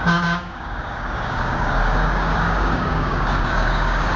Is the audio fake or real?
fake